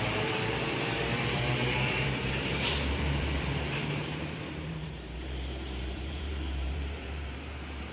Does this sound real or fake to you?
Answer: fake